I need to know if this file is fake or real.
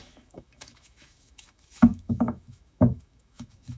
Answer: fake